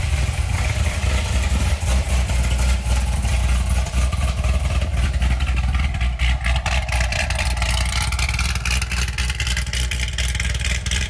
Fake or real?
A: fake